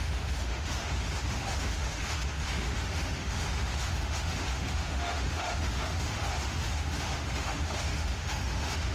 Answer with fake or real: fake